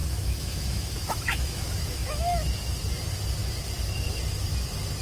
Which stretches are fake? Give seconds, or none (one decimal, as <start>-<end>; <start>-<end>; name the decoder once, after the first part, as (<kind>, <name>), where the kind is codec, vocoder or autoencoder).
0.0-2.7 (autoencoder, DAC-VAE)